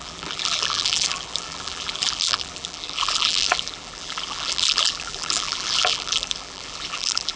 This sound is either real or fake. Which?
fake